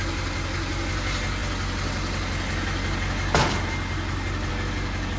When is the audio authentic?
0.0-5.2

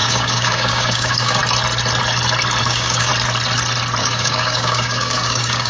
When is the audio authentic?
1.4-2.6; 3.1-4.0

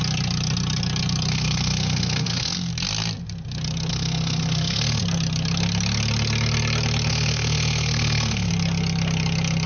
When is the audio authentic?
0.0-1.3; 2.7-3.9; 5.0-7.1; 8.5-9.7

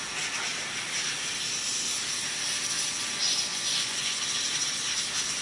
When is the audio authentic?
0.0-3.5; 4.2-5.4

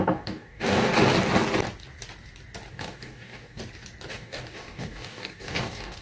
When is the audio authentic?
0.9-2.7; 3.6-4.1

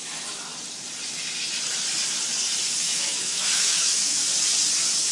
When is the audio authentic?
0.5-2.8; 4.2-5.1